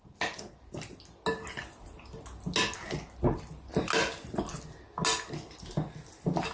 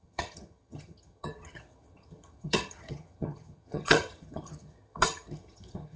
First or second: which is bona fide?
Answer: first